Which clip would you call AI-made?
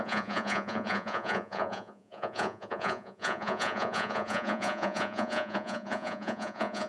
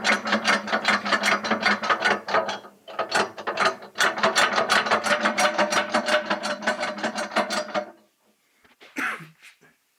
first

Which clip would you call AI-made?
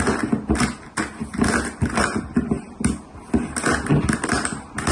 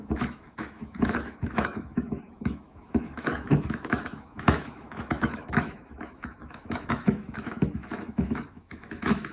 second